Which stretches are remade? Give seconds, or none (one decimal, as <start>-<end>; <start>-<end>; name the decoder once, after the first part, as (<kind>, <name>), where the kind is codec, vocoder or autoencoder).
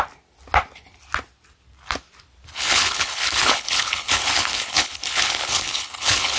2.5-6.4 (codec, HILCodec)